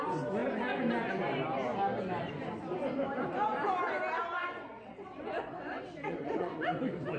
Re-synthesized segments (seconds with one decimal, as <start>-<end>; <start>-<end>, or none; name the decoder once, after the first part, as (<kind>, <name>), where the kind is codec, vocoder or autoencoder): 4.4-6.8 (vocoder, WaveNeXt)